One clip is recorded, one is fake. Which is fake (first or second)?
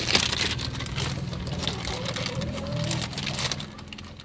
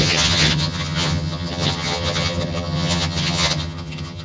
second